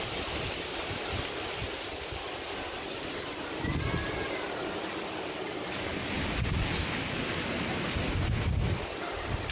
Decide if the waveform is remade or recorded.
recorded